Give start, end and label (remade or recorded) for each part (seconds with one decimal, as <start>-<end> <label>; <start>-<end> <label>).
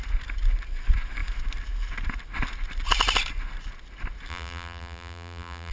0.0-4.3 recorded; 4.3-5.7 remade